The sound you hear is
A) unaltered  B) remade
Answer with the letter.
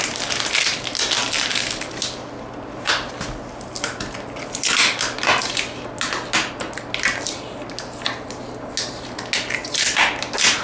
A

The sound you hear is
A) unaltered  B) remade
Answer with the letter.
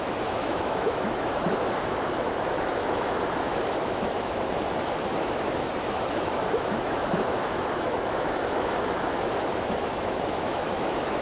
B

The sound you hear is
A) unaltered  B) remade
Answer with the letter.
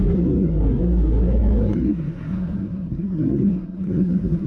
B